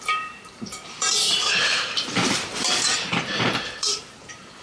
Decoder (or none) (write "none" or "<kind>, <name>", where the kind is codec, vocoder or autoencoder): vocoder, BigVGAN v2